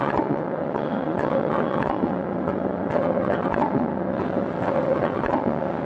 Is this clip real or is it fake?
fake